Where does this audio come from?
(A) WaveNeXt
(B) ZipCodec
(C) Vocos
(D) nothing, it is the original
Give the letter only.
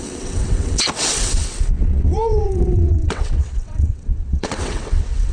A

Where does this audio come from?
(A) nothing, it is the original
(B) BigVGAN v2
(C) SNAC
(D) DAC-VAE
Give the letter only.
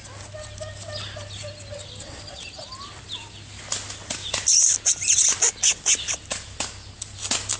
A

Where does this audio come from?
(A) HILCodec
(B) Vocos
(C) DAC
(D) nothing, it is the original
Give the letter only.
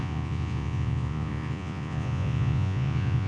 B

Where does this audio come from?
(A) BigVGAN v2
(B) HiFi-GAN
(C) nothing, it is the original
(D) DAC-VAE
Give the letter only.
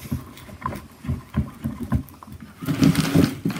C